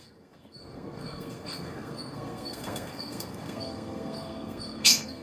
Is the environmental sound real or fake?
fake